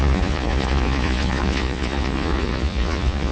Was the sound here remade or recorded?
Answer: remade